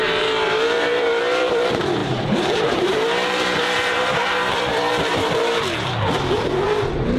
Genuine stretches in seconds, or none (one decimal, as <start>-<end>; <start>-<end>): 1.2-2.0; 5.3-7.2

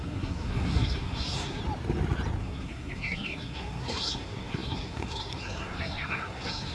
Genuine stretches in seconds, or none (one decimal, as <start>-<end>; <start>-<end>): 1.6-2.4

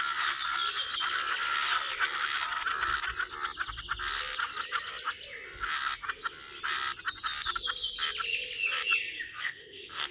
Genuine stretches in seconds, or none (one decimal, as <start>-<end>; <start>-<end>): 0.0-9.3